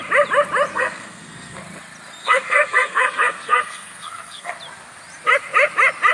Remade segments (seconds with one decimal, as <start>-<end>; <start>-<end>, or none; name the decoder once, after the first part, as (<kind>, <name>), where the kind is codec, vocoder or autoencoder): 0.7-1.6 (codec, SNAC); 2.2-4.5